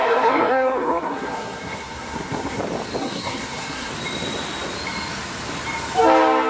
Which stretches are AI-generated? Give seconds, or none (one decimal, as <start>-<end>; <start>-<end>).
0.0-2.6; 3.0-3.9

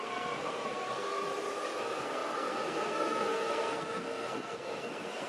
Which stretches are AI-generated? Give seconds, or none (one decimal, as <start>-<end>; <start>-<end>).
0.0-1.2; 1.8-5.3